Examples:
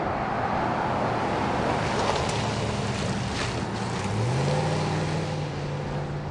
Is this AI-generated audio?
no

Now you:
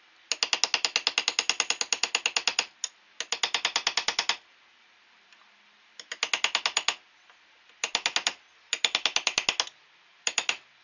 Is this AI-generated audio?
no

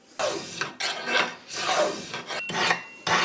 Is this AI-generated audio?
no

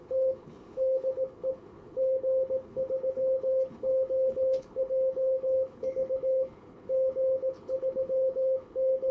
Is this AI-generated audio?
yes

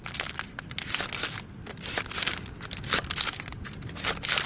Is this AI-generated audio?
no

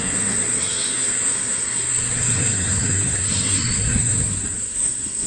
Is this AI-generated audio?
yes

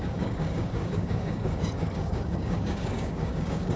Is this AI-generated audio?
yes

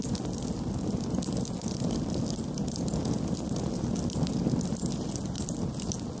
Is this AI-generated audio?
no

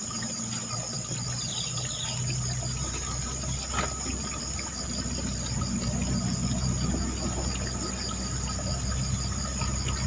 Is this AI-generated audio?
no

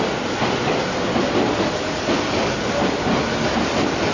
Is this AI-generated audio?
no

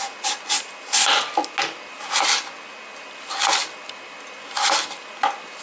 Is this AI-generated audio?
no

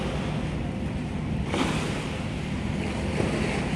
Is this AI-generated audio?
no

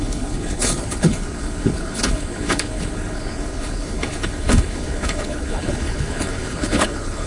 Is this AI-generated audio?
yes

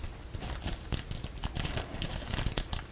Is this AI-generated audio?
no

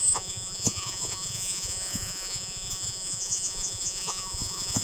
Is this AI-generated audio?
yes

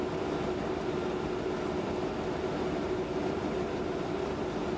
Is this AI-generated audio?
no